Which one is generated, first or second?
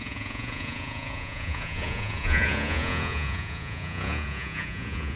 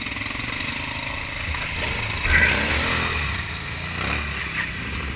first